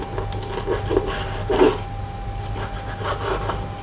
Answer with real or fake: real